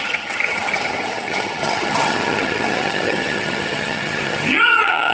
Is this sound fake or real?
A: fake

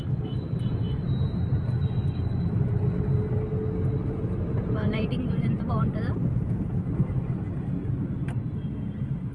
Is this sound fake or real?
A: real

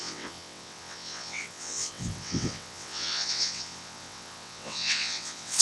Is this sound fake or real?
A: fake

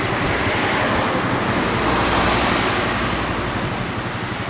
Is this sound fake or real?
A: real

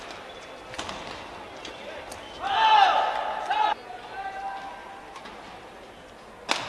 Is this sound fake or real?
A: real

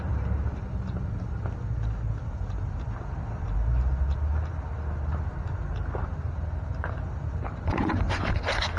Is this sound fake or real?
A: real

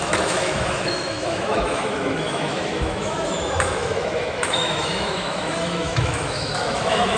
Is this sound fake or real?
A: fake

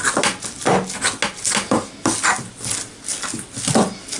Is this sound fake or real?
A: real